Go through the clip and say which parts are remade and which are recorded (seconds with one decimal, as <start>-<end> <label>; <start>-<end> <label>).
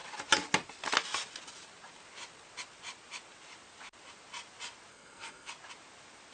0.0-4.9 recorded; 4.9-5.5 remade; 5.5-6.3 recorded